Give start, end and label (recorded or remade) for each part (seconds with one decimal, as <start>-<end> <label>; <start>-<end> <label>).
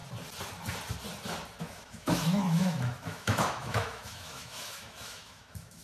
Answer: 0.0-1.6 recorded; 1.6-5.8 remade